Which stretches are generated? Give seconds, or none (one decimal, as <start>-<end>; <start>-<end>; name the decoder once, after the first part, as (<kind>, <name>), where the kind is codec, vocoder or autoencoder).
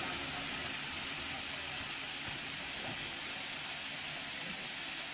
none